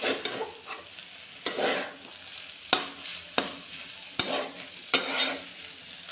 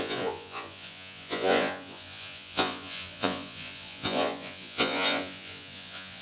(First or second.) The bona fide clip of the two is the first